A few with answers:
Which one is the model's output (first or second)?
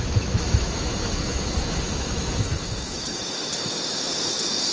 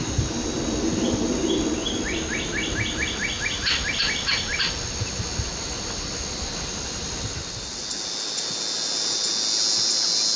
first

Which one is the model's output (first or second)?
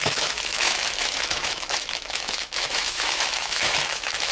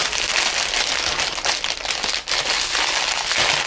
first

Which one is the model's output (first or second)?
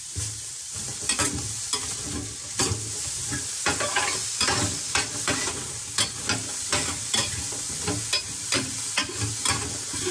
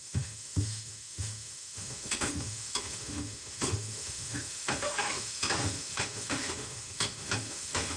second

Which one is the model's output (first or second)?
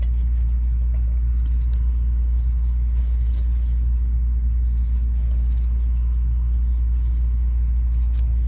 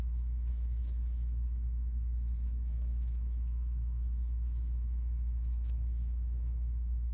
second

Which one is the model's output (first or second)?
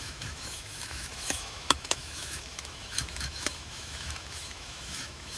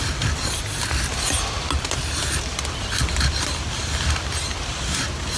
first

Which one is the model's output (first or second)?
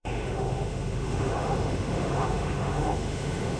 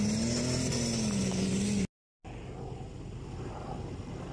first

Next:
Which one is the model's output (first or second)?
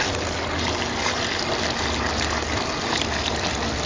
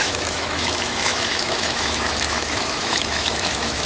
second